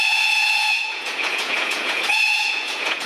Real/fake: fake